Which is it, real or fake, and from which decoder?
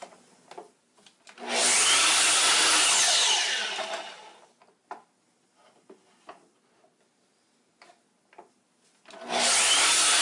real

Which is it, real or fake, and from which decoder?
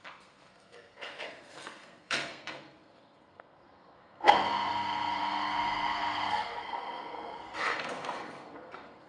fake, codec, SNAC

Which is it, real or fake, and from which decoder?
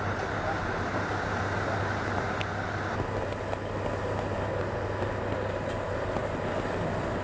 real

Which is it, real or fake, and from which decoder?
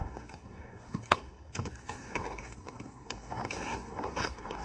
fake, codec, SNAC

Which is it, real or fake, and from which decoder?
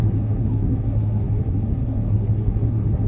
fake, codec, SNAC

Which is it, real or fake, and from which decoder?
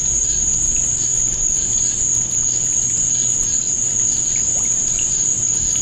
real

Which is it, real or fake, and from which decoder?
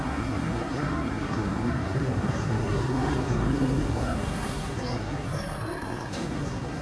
fake, codec, SNAC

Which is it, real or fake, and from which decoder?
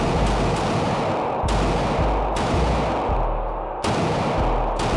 real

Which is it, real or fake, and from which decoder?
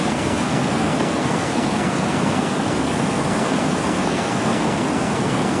fake, codec, SNAC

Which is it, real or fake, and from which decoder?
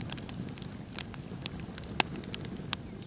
real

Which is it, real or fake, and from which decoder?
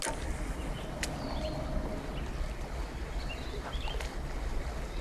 real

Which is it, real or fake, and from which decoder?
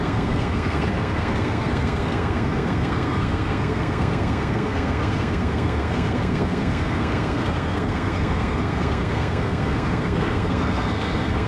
fake, codec, SNAC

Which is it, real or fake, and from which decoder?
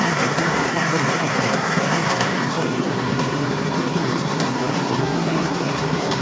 fake, codec, SNAC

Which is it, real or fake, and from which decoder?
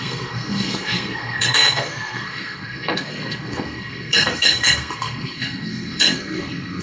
fake, codec, SNAC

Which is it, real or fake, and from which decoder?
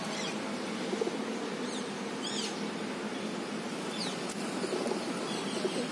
real